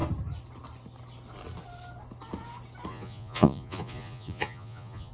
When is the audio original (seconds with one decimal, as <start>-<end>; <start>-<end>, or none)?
0.0-2.9